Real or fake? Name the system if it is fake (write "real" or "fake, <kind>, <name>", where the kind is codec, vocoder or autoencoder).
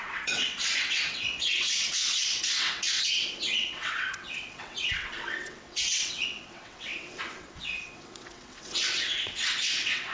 fake, vocoder, WaveNeXt